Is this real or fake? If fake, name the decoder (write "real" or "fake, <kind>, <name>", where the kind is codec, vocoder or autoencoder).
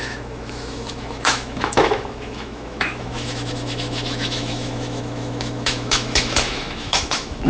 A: fake, autoencoder, DAC-VAE